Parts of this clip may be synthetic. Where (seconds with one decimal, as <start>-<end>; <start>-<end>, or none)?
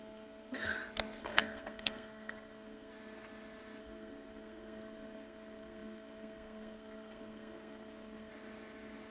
0.0-0.7; 1.2-2.9; 3.8-8.3